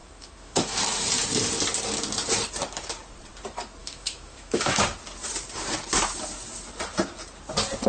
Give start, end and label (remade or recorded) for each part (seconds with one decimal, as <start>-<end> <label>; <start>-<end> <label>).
0.0-0.8 remade; 0.8-3.8 recorded; 3.8-4.8 remade; 4.8-7.9 recorded